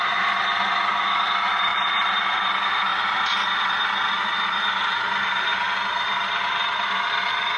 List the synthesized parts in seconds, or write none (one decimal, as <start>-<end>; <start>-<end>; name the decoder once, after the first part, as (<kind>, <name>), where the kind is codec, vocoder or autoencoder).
1.7-2.5 (vocoder, BigVGAN v2)